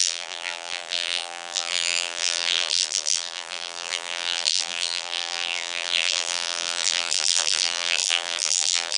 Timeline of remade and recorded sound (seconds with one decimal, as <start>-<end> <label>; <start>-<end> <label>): 0.0-9.0 remade